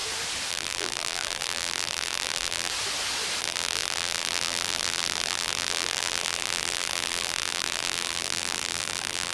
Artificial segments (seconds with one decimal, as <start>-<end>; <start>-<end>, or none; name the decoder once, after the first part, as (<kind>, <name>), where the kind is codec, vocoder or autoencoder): 0.5-2.7 (vocoder, BigVGAN v2); 3.4-9.3